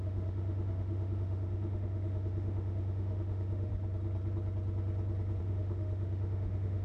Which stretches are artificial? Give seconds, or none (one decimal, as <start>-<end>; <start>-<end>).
0.0-3.7; 5.4-6.8